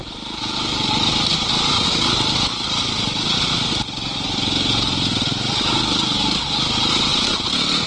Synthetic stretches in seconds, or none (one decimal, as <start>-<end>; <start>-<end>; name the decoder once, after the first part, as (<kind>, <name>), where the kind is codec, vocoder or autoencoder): 7.1-7.9 (vocoder, BigVGAN v2)